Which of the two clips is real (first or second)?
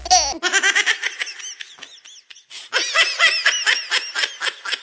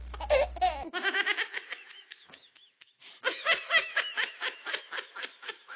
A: first